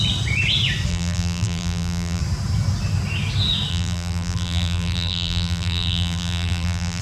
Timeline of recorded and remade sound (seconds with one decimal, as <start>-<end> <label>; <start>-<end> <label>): 0.0-0.9 recorded; 0.9-2.2 remade; 2.2-3.7 recorded; 3.7-7.0 remade